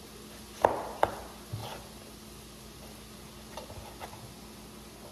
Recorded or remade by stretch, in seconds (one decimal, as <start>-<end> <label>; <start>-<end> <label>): 0.0-5.1 recorded